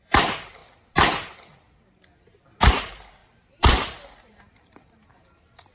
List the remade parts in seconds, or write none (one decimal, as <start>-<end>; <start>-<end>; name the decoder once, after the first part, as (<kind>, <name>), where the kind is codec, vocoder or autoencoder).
0.0-0.6 (vocoder, BigVGAN v2); 2.7-3.2; 4.6-5.7